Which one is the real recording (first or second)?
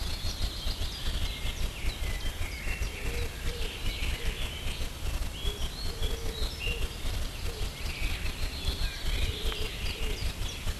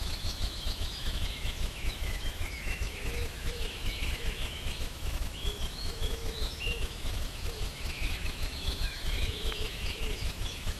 first